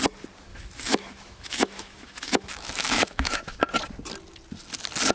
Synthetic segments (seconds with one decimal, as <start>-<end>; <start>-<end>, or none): 0.5-3.6